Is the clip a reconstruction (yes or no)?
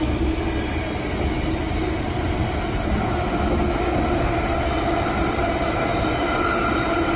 no